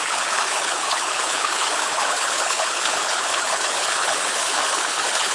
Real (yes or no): no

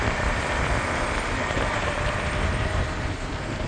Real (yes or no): yes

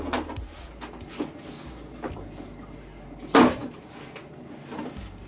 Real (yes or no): yes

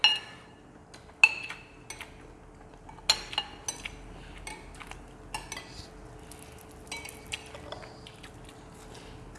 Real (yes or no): yes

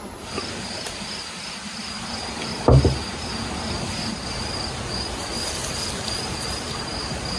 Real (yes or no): yes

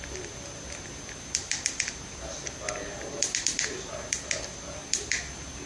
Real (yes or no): yes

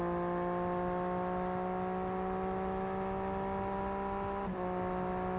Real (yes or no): yes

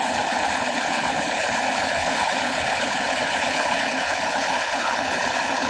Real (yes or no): no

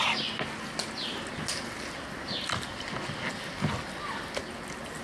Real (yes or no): yes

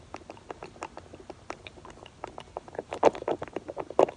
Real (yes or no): yes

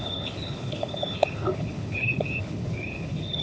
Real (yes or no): no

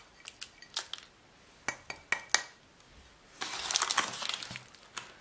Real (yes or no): yes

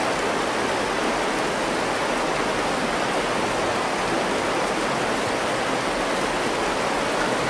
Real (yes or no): yes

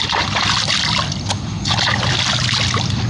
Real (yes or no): yes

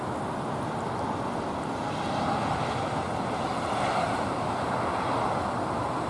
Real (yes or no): yes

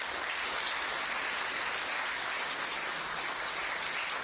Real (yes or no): yes